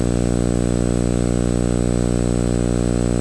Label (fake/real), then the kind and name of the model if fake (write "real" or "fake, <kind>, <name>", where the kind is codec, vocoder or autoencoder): real